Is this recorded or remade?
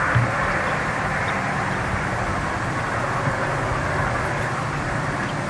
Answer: recorded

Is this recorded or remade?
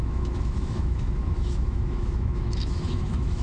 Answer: remade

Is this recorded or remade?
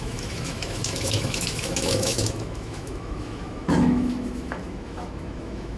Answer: remade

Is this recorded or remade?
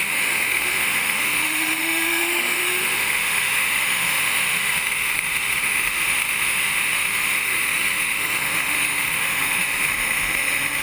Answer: remade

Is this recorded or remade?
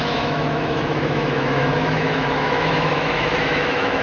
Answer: remade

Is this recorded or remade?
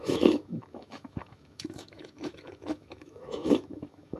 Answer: remade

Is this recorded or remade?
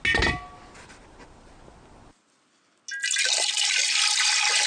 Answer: recorded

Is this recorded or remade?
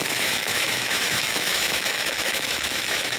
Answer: remade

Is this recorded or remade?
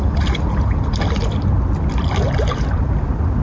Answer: recorded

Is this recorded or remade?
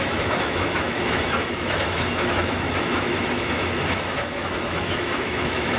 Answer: remade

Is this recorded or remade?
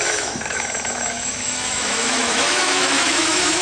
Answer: remade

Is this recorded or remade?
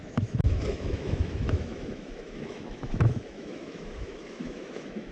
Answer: remade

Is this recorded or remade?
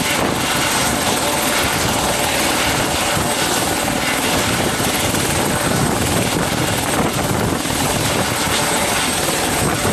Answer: recorded